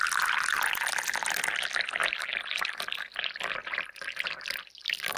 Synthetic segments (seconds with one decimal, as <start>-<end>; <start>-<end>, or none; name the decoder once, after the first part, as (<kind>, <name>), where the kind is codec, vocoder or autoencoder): none